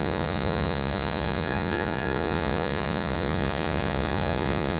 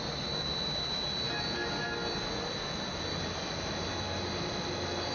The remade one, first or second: first